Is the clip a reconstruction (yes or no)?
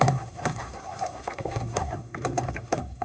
yes